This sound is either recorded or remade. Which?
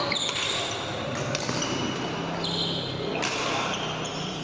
recorded